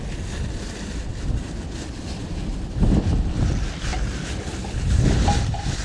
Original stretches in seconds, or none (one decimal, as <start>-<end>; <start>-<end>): 0.0-1.1; 1.8-2.2; 2.8-3.9; 5.3-5.8